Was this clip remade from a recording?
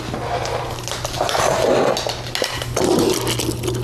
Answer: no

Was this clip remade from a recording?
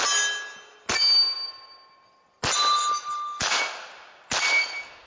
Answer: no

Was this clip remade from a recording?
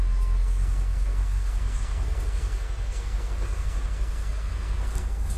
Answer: yes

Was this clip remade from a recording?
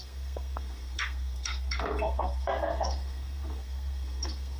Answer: yes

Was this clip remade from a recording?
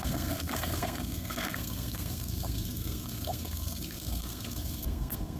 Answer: yes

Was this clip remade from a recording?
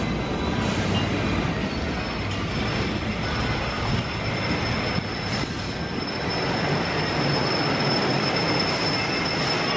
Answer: no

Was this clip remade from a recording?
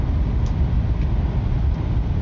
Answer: no